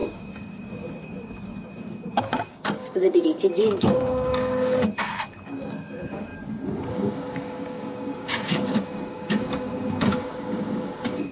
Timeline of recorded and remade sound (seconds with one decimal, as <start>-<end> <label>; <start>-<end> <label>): 0.0-6.3 remade; 6.3-6.9 recorded; 6.9-11.3 remade